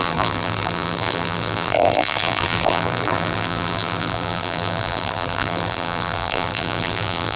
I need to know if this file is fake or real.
fake